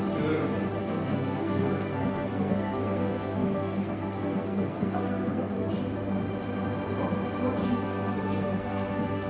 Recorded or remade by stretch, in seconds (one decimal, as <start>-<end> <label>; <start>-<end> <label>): 0.0-0.8 recorded; 0.8-5.7 remade; 5.7-7.6 recorded; 7.6-9.3 remade